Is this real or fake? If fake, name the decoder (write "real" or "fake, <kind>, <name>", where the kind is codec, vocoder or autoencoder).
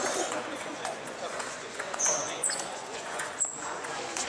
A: fake, vocoder, Vocos